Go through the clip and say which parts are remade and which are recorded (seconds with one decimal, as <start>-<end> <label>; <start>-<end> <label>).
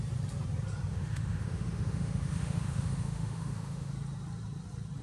0.0-0.9 recorded; 0.9-3.9 remade; 3.9-5.0 recorded